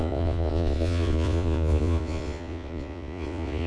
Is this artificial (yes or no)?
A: yes